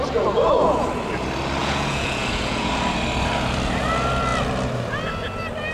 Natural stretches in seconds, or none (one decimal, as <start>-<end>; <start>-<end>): 0.0-1.6; 2.7-5.7